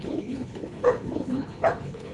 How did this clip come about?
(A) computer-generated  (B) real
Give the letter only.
A